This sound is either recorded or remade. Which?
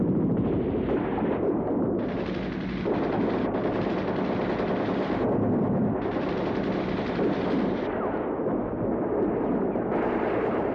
recorded